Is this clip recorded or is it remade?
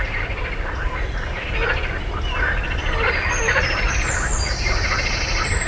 recorded